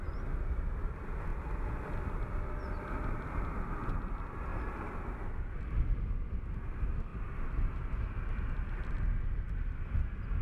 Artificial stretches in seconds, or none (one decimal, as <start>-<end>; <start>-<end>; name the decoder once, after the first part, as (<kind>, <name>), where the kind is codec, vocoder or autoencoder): none